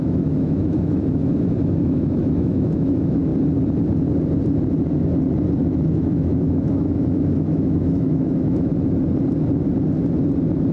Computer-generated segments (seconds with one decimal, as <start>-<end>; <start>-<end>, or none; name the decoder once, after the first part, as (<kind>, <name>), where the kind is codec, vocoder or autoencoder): 0.0-3.3 (autoencoder, DAC-VAE); 5.9-8.7